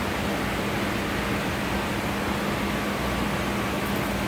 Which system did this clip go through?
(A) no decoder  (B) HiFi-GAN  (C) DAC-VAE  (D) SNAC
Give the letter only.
A